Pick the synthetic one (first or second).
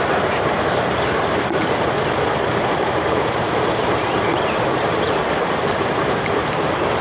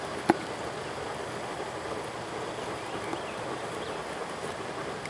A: first